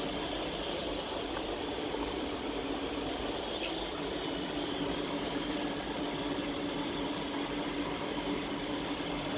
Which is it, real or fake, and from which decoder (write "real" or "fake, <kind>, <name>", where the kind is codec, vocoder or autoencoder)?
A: fake, vocoder, BigVGAN v2